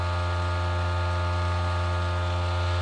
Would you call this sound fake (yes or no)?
no